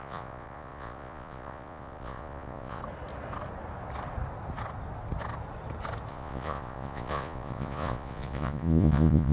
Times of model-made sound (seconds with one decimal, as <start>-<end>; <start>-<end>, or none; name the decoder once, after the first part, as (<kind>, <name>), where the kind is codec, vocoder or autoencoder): 0.0-2.8 (vocoder, Vocos); 6.1-9.3